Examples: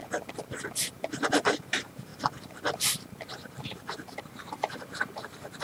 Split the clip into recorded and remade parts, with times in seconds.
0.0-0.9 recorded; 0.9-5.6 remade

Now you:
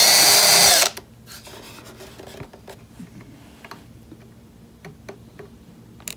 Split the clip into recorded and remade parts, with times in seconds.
0.0-6.2 recorded

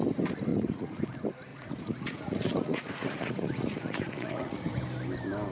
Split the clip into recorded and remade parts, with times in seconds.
0.0-0.5 recorded; 0.5-1.0 remade; 1.0-1.5 recorded; 1.5-4.8 remade; 4.8-5.5 recorded

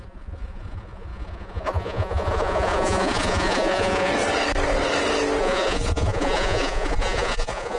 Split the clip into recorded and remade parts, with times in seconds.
0.0-4.1 remade; 4.1-5.4 recorded; 5.4-7.8 remade

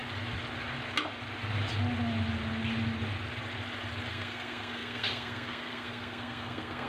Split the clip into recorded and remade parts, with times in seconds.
0.0-4.1 recorded; 4.1-6.9 remade

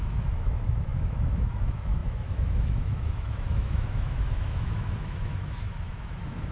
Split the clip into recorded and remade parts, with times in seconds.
0.0-6.5 remade

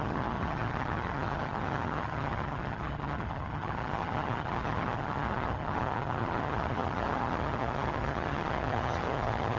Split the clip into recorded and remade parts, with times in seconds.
0.0-9.6 remade